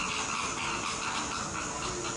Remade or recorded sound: recorded